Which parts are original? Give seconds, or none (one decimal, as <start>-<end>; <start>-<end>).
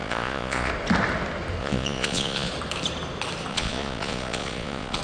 0.7-1.6; 2.5-3.5